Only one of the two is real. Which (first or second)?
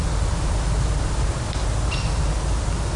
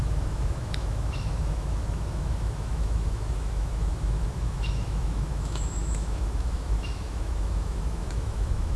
first